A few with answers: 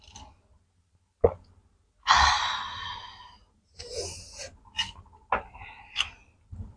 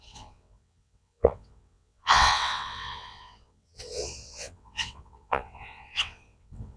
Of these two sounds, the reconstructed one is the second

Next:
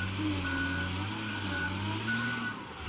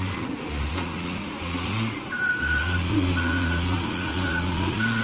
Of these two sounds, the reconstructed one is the second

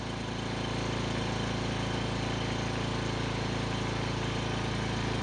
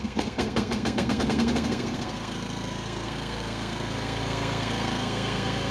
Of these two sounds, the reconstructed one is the second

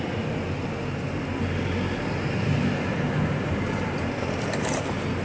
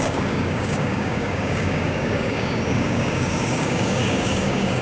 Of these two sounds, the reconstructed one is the second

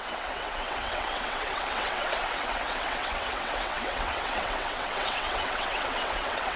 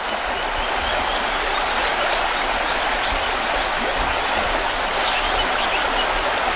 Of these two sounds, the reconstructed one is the first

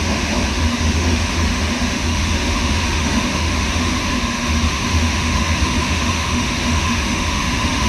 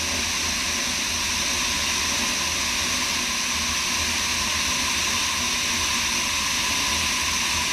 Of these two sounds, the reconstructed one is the first